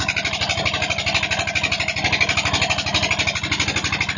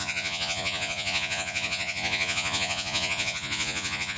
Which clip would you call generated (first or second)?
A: second